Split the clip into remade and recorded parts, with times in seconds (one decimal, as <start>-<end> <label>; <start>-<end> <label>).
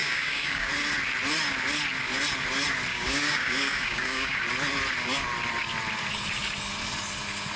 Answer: 0.0-0.7 remade; 0.7-2.9 recorded; 2.9-4.4 remade; 4.4-7.6 recorded